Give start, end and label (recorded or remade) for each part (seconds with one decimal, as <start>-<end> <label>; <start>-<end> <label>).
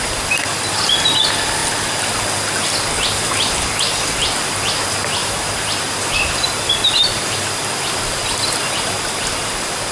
0.0-5.2 recorded; 5.2-5.8 remade; 5.8-7.0 recorded; 7.0-7.6 remade; 7.6-9.9 recorded